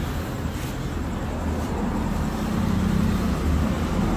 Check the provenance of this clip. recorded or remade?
recorded